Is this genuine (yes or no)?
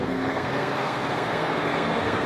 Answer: no